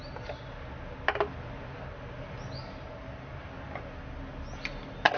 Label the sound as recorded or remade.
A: recorded